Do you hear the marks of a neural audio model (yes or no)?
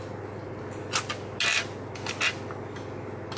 no